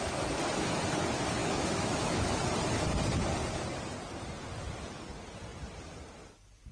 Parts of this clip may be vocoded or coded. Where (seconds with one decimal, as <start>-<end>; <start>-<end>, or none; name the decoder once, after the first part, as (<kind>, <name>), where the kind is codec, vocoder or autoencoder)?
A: 1.4-2.3 (autoencoder, DAC-VAE)